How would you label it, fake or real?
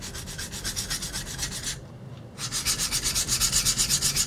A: real